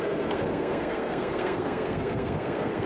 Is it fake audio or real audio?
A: fake